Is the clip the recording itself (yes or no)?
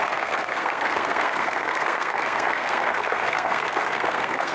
no